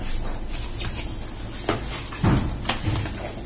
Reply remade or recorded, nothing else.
recorded